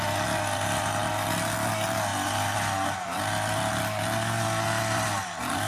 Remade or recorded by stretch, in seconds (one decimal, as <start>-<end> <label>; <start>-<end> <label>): 0.0-5.7 recorded